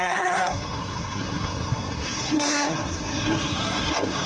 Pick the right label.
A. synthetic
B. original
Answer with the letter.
A